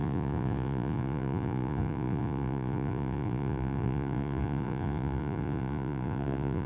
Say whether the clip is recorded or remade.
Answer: remade